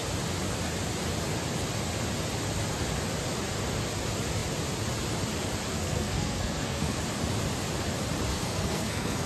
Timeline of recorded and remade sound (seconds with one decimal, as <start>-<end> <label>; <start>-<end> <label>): 0.0-5.7 recorded; 5.7-7.0 remade; 7.0-8.3 recorded; 8.3-9.3 remade